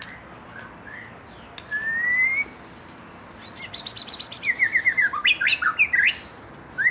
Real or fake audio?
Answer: real